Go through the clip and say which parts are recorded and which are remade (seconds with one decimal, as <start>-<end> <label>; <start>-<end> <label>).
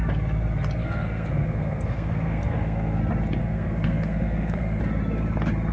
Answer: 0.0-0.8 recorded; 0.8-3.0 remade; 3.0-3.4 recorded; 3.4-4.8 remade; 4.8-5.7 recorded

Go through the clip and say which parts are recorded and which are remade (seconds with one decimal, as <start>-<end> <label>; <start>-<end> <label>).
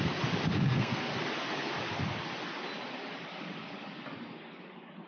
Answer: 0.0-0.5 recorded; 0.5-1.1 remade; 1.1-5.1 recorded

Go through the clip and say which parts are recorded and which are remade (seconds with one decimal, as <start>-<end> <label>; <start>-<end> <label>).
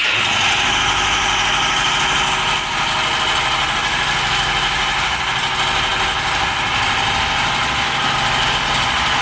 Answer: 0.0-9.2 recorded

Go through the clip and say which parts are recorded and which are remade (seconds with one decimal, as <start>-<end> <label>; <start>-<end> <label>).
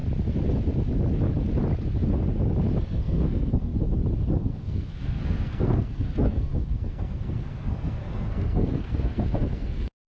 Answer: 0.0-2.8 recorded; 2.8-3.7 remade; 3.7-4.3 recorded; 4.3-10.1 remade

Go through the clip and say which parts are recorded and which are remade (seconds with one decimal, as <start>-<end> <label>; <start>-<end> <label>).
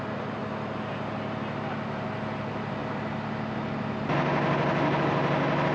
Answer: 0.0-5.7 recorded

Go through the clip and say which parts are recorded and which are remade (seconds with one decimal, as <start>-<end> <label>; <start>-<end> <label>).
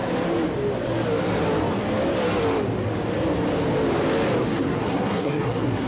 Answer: 0.0-4.4 recorded; 4.4-5.9 remade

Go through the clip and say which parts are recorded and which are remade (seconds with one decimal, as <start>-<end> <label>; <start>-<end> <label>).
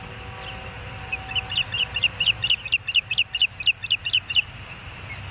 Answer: 0.0-5.3 recorded